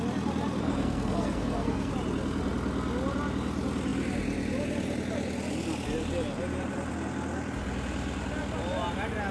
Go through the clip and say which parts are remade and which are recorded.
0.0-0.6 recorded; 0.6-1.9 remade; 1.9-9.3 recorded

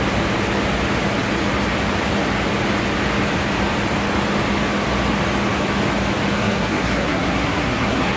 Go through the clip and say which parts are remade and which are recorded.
0.0-6.4 recorded; 6.4-8.2 remade

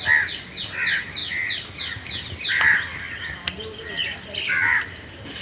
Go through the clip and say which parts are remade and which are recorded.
0.0-5.4 recorded

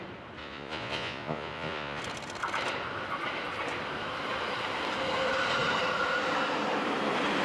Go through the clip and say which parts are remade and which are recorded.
0.0-0.4 recorded; 0.4-2.0 remade; 2.0-7.4 recorded

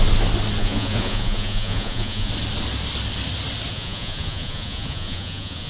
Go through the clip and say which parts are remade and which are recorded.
0.0-0.6 recorded; 0.6-2.3 remade; 2.3-3.7 recorded; 3.7-5.7 remade

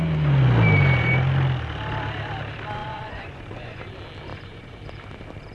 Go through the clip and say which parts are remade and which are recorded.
0.0-2.8 recorded; 2.8-3.8 remade; 3.8-4.3 recorded; 4.3-4.8 remade; 4.8-5.5 recorded

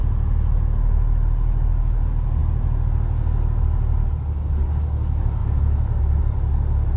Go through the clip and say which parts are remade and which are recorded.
0.0-7.0 recorded